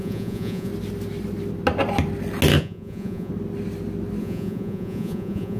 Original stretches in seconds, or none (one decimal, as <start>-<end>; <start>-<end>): 0.7-2.6; 3.3-4.2

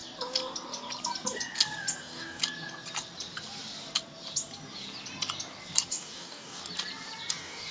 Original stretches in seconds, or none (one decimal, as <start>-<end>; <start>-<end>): 0.0-2.0; 2.4-5.9; 6.6-7.3

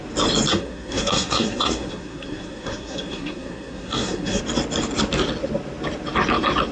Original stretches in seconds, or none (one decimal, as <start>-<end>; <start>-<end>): 0.0-0.5; 4.4-6.7

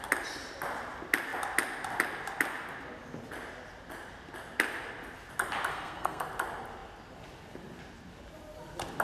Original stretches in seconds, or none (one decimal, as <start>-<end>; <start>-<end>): 0.0-5.7; 6.2-9.0

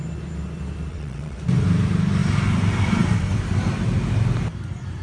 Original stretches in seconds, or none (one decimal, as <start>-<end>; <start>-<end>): 0.0-0.9; 1.4-5.0

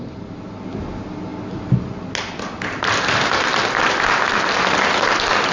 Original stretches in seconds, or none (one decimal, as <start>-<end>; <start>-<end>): 0.0-5.5

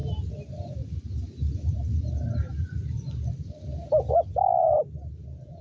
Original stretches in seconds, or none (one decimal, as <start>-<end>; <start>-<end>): 0.0-5.6